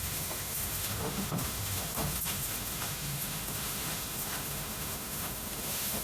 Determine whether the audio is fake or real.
fake